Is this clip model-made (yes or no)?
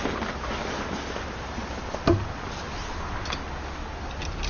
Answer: no